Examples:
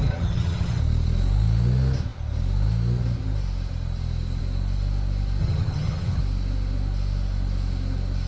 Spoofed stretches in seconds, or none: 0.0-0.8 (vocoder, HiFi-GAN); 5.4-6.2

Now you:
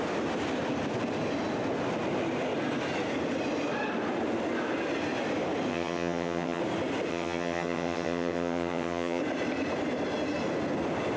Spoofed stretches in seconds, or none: 5.7-6.6 (vocoder, HiFi-GAN); 7.1-9.2

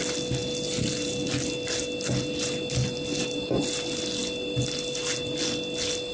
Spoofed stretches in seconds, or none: none